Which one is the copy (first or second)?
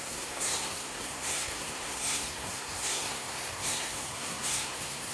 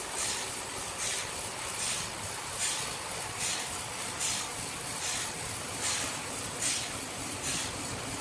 first